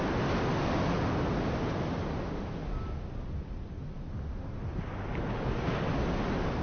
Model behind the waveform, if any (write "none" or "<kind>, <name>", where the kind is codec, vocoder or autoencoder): none